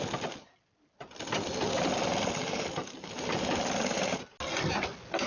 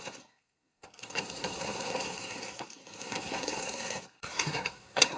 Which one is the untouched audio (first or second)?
first